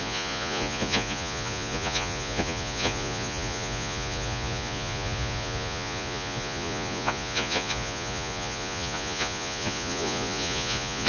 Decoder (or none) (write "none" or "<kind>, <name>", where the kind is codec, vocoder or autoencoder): vocoder, Vocos